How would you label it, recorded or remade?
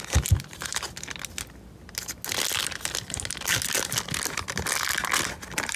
recorded